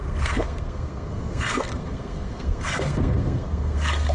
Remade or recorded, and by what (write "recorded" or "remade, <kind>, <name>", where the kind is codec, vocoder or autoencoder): remade, codec, SNAC